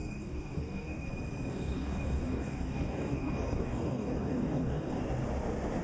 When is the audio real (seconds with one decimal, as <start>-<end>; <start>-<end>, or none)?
1.1-1.5; 5.0-5.8